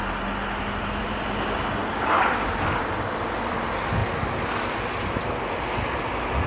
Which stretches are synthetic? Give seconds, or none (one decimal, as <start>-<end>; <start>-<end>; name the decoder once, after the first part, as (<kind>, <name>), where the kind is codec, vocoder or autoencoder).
none